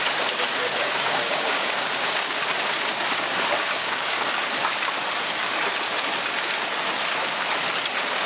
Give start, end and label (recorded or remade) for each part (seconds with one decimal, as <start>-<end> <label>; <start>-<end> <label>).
0.0-0.5 recorded; 0.5-2.4 remade; 2.4-3.8 recorded; 3.8-4.4 remade; 4.4-8.3 recorded